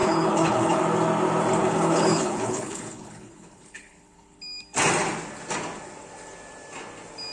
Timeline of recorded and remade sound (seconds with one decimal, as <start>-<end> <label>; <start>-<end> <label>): 0.0-0.8 remade; 0.8-1.6 recorded; 1.6-4.4 remade; 4.4-7.3 recorded